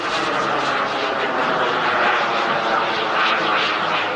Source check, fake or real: real